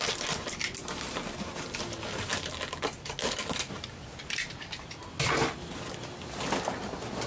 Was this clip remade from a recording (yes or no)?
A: no